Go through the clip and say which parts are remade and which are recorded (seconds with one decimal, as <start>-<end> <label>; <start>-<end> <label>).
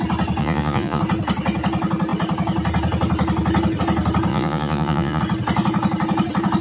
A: 0.0-0.4 recorded; 0.4-1.0 remade; 1.0-4.3 recorded; 4.3-5.2 remade; 5.2-6.6 recorded